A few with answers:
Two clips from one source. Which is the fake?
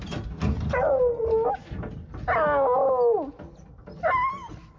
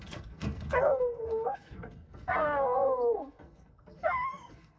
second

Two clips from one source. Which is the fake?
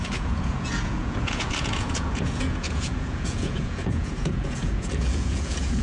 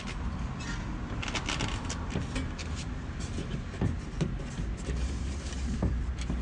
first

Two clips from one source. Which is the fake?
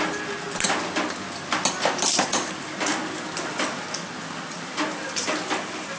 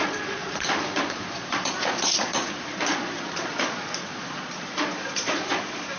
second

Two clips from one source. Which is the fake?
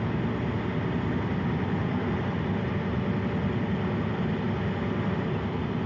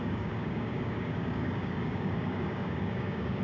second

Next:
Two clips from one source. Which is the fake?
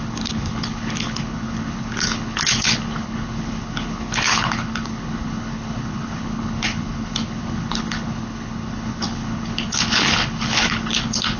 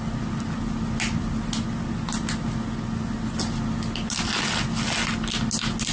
first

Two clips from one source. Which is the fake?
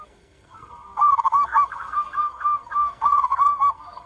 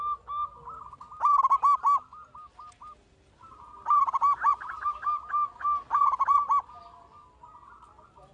first